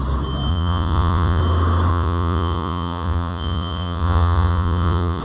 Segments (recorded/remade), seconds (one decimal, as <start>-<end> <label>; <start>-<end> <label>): 0.0-0.5 recorded; 0.5-1.4 remade; 1.4-1.9 recorded; 1.9-5.2 remade